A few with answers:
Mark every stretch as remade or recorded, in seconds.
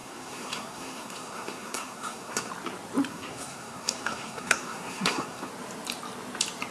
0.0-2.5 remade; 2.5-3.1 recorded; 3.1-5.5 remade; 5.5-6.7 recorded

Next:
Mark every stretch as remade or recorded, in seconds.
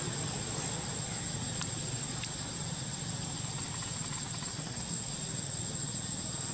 0.0-4.5 recorded; 4.5-5.1 remade; 5.1-6.5 recorded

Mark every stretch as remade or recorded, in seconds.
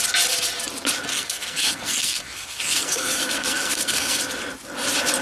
0.0-1.1 recorded; 1.1-4.2 remade; 4.2-5.2 recorded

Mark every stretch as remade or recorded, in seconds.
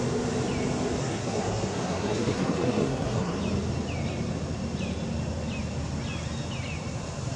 0.0-1.0 recorded; 1.0-3.4 remade; 3.4-7.4 recorded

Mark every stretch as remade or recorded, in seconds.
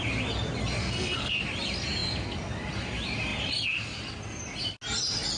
0.0-0.8 recorded; 0.8-1.3 remade; 1.3-5.4 recorded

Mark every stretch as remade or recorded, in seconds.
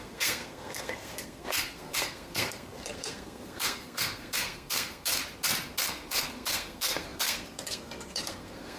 0.0-5.2 remade; 5.2-5.8 recorded; 5.8-8.8 remade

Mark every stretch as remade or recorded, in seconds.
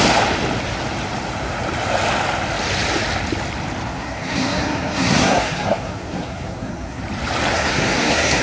0.0-3.9 recorded; 3.9-7.0 remade; 7.0-7.5 recorded; 7.5-8.4 remade